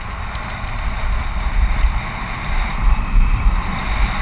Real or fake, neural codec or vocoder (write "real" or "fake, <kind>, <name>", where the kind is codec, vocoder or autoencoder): real